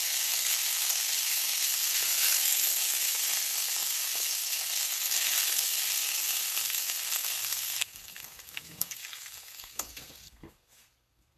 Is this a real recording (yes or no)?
no